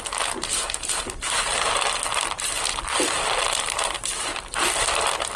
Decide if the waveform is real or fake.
fake